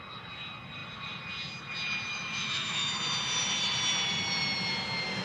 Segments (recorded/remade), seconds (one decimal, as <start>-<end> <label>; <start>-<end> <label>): 0.0-2.1 recorded; 2.1-2.9 remade; 2.9-5.2 recorded